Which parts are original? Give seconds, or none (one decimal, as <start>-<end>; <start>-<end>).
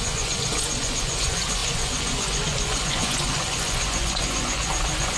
none